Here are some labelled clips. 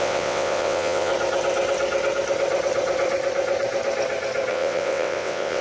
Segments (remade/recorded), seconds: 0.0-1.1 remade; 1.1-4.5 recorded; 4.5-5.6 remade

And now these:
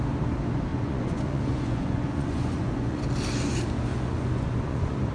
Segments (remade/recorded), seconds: 0.0-0.7 recorded; 0.7-3.0 remade; 3.0-3.9 recorded; 3.9-5.1 remade

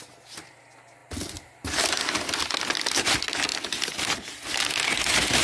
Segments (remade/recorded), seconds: 0.0-5.4 recorded

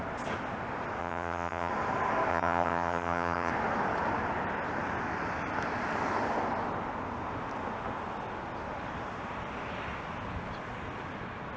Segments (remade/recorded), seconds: 0.0-1.0 recorded; 1.0-1.7 remade; 1.7-2.3 recorded; 2.3-3.5 remade; 3.5-11.6 recorded

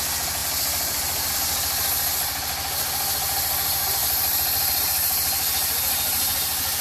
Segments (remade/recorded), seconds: 0.0-0.4 recorded; 0.4-1.3 remade; 1.3-4.0 recorded; 4.0-4.8 remade; 4.8-6.8 recorded

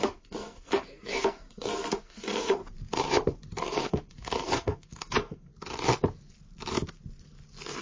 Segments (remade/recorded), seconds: 0.0-2.6 remade; 2.6-3.6 recorded; 3.6-5.5 remade; 5.5-7.8 recorded

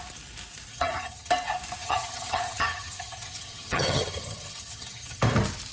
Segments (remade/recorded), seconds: 0.0-0.7 recorded; 0.7-1.3 remade; 1.3-1.8 recorded; 1.8-5.2 remade; 5.2-5.7 recorded

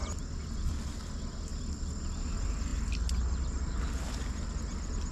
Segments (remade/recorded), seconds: 0.0-5.1 recorded